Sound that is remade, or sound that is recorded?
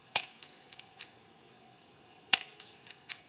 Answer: remade